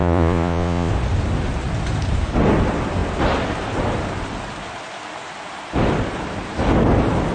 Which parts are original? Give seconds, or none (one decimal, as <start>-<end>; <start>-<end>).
0.9-7.3